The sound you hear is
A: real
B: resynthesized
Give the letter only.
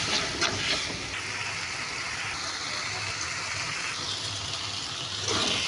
A